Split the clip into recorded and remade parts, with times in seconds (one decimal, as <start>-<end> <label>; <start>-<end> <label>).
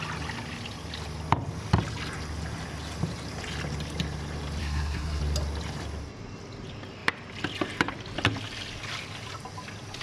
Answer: 0.0-4.6 recorded; 4.6-5.2 remade; 5.2-10.0 recorded